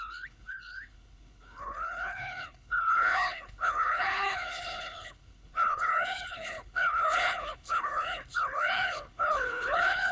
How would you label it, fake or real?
fake